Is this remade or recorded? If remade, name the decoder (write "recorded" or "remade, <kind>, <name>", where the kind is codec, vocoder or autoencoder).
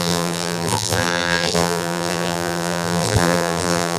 remade, vocoder, BigVGAN v2